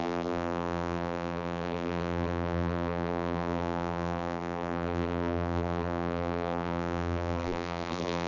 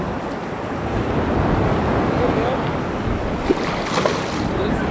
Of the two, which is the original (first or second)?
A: second